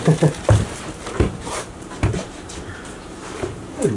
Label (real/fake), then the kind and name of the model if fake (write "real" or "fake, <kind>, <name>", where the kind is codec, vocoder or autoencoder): fake, vocoder, BigVGAN v2